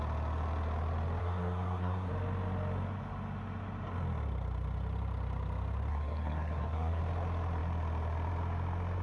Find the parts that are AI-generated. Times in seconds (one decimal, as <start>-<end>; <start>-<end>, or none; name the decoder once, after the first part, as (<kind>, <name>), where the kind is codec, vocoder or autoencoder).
1.2-2.1 (codec, SNAC); 5.9-7.0